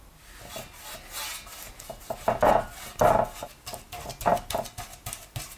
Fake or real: real